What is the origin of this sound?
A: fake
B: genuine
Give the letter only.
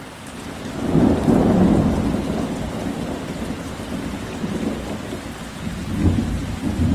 B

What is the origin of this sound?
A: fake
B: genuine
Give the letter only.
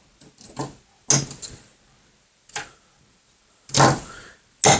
B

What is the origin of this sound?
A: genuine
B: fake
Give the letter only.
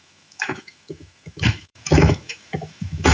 B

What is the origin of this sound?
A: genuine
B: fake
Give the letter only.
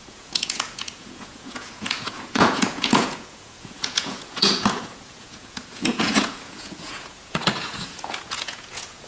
B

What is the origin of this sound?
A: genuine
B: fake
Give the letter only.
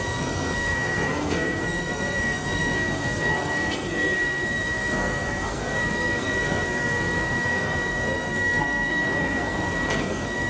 B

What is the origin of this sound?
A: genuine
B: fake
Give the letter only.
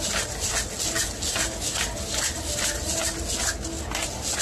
A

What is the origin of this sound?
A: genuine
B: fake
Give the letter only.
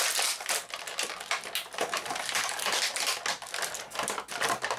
A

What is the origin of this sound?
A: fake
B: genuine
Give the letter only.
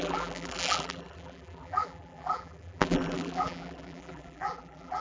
A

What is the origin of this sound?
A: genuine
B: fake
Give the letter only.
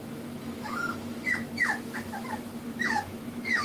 B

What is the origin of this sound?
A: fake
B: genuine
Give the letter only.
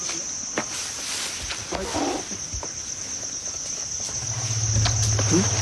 B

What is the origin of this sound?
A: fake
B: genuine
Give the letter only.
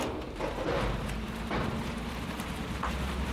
B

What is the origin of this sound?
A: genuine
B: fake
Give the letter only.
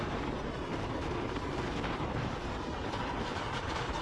B